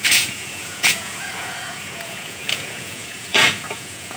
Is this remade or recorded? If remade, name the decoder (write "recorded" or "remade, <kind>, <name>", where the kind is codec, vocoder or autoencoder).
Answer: remade, vocoder, Vocos